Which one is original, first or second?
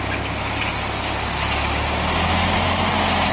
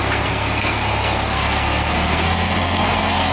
first